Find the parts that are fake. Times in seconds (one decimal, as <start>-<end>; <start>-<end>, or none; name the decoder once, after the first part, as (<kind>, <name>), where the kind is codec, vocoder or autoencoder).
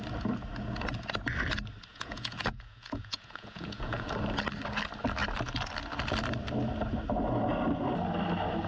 1.9-4.1 (vocoder, Vocos)